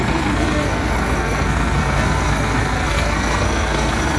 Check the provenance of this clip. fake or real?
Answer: fake